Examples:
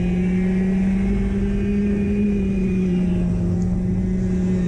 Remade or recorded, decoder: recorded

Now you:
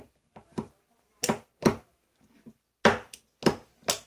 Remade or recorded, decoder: recorded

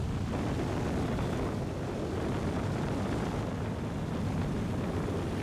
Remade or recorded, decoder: recorded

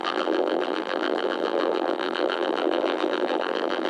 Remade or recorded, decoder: remade, vocoder, BigVGAN v2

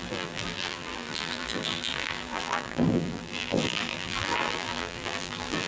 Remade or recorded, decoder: remade, vocoder, BigVGAN v2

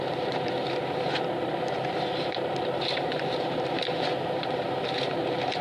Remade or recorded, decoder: remade, vocoder, BigVGAN v2